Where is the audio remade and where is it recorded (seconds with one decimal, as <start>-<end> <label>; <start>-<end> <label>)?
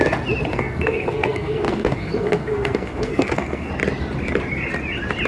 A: 0.0-0.5 recorded; 0.5-3.7 remade; 3.7-5.3 recorded